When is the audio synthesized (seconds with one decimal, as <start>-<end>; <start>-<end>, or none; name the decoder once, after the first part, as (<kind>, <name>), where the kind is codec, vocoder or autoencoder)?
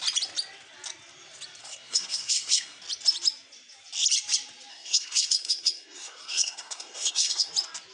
1.6-2.8 (codec, SNAC); 4.7-7.5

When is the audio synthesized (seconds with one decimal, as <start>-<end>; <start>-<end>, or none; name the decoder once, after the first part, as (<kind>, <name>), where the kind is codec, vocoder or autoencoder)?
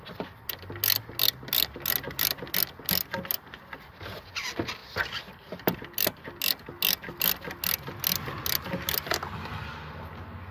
none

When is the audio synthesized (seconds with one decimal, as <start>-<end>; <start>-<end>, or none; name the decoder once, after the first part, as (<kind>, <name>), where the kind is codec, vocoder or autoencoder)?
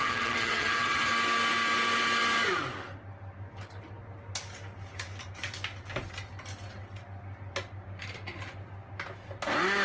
0.0-1.1 (vocoder, HiFi-GAN)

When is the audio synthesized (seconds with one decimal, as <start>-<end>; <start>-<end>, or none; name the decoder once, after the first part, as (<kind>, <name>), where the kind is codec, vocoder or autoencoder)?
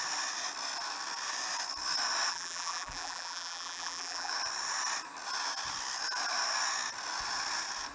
2.3-4.3 (vocoder, BigVGAN v2)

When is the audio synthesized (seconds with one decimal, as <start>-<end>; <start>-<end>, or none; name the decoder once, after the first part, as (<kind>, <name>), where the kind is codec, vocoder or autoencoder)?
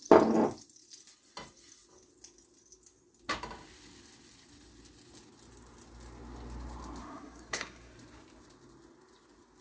7.0-7.9 (codec, SNAC)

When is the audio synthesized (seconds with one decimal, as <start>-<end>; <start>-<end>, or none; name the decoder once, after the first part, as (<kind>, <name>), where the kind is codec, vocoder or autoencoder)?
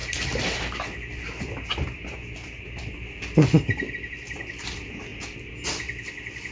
none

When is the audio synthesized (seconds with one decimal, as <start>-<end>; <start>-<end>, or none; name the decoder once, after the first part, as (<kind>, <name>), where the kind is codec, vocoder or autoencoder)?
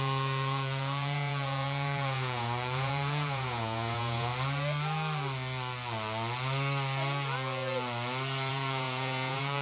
0.0-4.3 (vocoder, Vocos); 8.5-9.6